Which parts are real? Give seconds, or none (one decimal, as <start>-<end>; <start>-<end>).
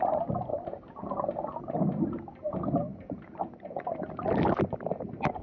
0.0-5.4